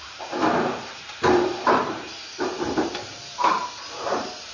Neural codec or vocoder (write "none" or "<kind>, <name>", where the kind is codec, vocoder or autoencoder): vocoder, BigVGAN v2